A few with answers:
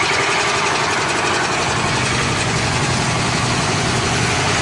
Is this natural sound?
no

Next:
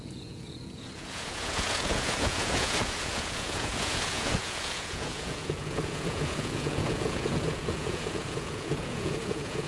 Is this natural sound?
no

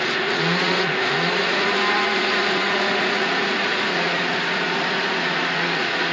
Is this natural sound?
no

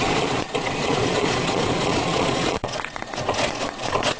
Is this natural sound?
no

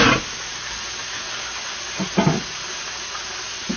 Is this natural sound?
yes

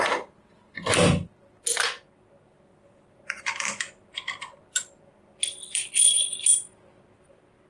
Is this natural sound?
yes